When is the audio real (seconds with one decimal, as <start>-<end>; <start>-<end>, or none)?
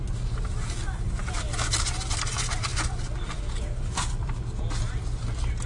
0.0-1.2; 1.7-2.7